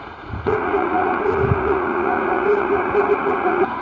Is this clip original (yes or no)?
no